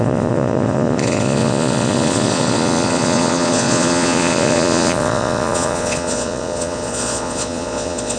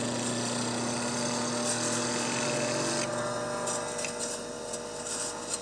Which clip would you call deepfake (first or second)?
first